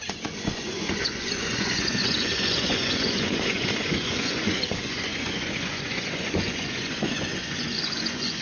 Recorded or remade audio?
remade